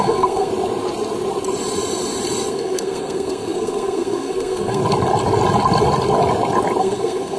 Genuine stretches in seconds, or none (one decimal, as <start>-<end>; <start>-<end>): 0.5-2.5; 4.8-6.8